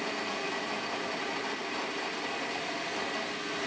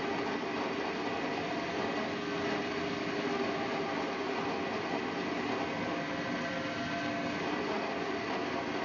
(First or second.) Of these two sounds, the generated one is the first